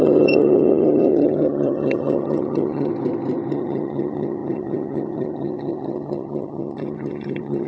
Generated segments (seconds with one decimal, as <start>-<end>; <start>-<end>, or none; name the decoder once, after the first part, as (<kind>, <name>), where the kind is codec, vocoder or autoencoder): 0.0-2.9 (vocoder, HiFi-GAN); 3.5-7.7